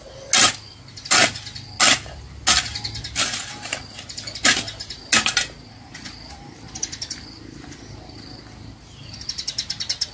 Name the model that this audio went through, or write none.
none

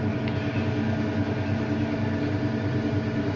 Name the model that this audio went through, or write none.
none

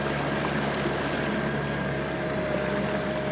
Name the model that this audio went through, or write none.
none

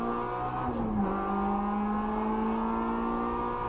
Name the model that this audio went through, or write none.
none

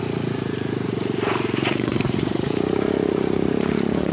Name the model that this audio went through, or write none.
vocoder, Vocos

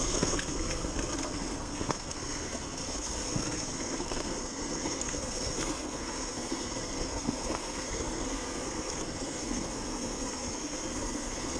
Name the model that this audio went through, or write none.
codec, SNAC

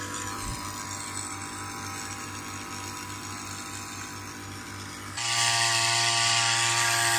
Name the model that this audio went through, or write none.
none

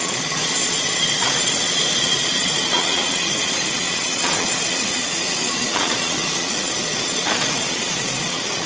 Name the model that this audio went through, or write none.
vocoder, Vocos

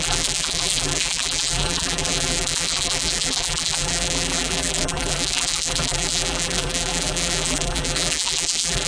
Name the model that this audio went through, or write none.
vocoder, BigVGAN v2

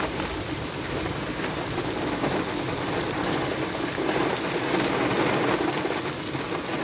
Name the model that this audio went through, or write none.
none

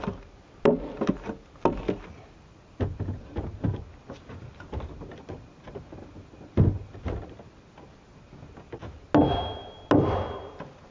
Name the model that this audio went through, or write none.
none